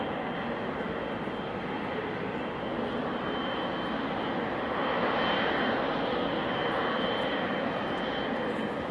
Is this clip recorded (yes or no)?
yes